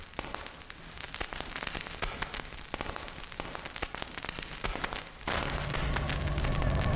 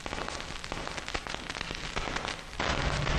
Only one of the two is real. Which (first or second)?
second